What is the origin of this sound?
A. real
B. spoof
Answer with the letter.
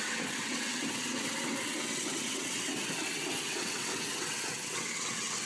B